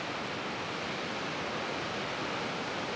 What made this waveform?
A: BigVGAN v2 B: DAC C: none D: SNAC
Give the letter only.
C